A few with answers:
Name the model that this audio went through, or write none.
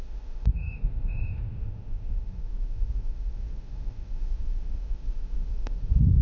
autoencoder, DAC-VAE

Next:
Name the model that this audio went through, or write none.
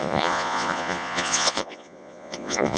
vocoder, Vocos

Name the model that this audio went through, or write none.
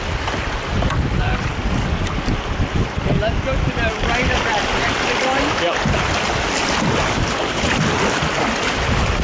none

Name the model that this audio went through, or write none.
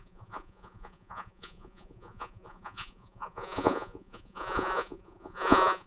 vocoder, Vocos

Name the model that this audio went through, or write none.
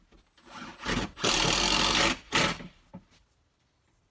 none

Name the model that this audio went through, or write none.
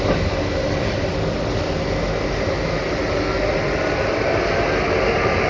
none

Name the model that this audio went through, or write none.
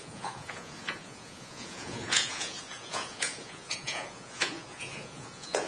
vocoder, Vocos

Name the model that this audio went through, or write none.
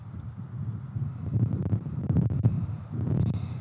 none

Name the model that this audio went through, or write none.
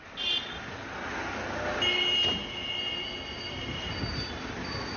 none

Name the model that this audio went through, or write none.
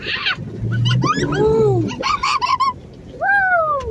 none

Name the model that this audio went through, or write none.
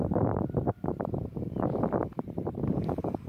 vocoder, BigVGAN v2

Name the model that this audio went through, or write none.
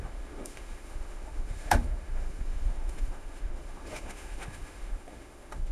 autoencoder, DAC-VAE